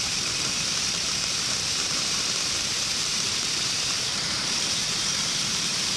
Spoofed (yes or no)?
yes